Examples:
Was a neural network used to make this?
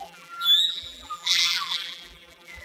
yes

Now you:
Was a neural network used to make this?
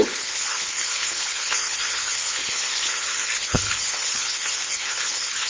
yes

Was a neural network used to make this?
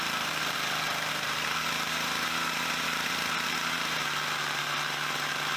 yes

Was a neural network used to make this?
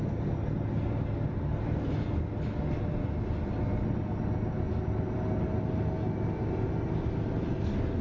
no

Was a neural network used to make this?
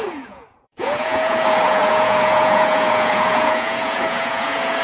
yes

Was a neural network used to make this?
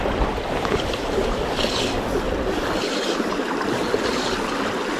no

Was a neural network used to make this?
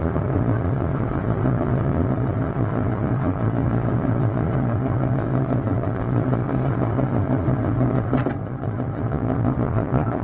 yes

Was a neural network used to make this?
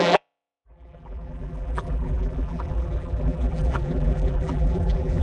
yes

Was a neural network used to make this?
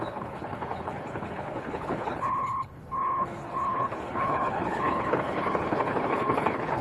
yes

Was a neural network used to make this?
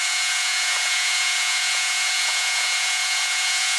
yes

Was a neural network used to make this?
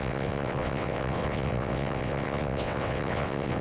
yes